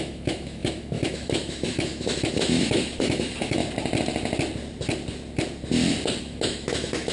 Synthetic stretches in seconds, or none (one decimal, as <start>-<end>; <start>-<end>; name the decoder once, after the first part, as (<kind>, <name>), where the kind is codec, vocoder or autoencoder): 0.0-3.6 (autoencoder, DAC-VAE); 6.2-7.1